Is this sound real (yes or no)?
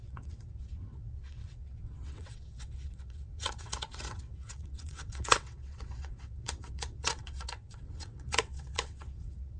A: no